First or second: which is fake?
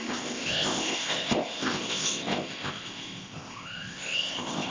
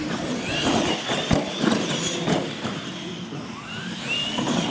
first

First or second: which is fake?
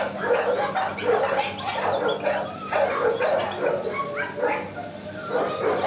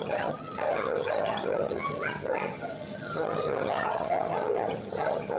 second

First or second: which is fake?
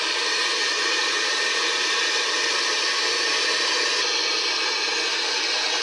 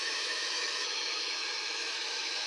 second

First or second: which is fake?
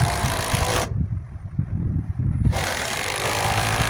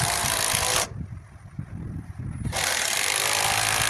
first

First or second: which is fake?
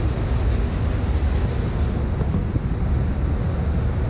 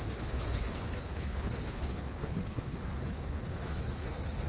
second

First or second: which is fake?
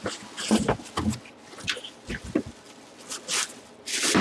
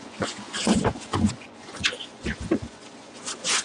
second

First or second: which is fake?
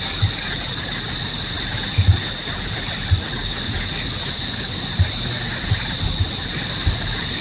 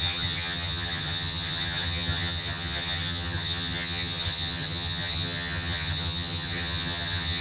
second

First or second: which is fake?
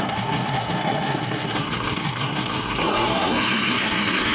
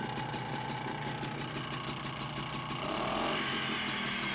first